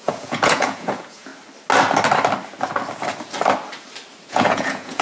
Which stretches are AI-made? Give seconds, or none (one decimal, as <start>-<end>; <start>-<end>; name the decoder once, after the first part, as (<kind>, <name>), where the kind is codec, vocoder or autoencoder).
0.0-1.3 (vocoder, Vocos); 4.3-5.0